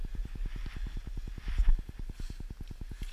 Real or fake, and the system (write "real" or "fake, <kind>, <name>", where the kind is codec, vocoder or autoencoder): real